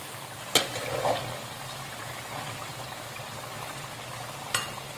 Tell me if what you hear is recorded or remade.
recorded